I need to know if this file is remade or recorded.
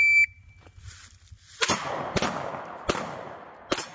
recorded